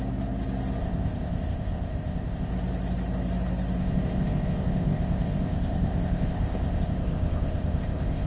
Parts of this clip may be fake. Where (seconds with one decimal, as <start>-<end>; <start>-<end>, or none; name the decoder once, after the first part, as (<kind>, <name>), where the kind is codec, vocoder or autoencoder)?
0.8-2.5 (codec, ZipCodec); 3.8-8.3